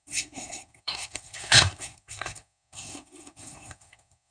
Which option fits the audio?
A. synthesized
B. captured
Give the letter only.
A